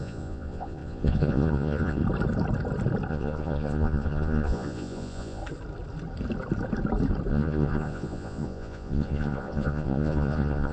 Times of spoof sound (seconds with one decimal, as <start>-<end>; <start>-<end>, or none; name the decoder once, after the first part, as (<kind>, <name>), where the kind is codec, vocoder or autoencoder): 0.0-2.0 (vocoder, Vocos); 3.1-5.4; 7.3-10.7

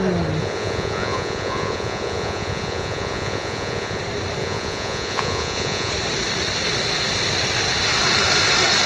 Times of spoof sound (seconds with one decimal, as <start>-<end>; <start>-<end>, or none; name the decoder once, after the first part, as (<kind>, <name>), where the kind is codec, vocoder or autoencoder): 0.4-4.0 (vocoder, Vocos); 4.4-5.9

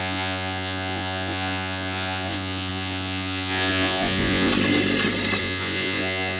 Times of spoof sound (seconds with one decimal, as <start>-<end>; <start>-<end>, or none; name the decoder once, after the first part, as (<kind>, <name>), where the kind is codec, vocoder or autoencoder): 0.0-4.5 (vocoder, Vocos); 5.4-6.4

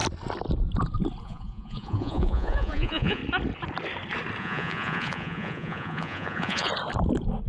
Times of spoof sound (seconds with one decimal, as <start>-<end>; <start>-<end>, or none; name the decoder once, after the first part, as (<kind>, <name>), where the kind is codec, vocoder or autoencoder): 1.2-3.2 (vocoder, Vocos); 4.4-6.7

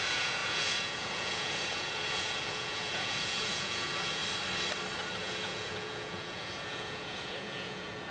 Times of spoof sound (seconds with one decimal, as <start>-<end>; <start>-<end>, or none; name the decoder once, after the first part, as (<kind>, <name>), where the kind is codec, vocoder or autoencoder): 0.0-4.2 (vocoder, Vocos); 5.2-8.1

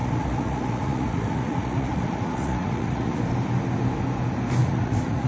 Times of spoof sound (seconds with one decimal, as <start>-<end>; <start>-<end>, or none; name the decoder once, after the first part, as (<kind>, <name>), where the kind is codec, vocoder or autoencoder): 0.0-3.2 (vocoder, Vocos); 4.6-5.3

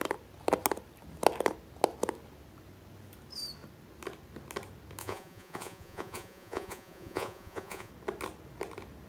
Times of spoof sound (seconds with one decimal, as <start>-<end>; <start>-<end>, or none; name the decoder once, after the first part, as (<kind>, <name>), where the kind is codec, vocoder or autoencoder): 5.0-7.9 (vocoder, Vocos)